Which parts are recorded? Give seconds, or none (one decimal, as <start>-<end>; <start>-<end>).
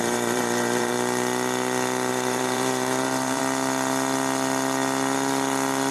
0.9-2.1; 3.4-5.9